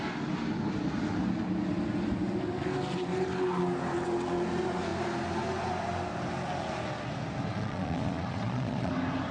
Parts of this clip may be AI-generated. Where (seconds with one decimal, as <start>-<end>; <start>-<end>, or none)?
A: 7.5-8.9